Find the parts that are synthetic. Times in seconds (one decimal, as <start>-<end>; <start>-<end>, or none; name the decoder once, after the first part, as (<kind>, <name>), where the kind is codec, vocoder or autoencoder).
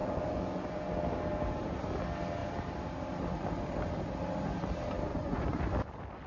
0.0-0.9 (vocoder, Vocos); 5.1-5.6